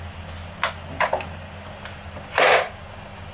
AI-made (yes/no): no